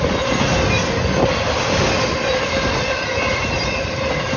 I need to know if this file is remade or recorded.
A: recorded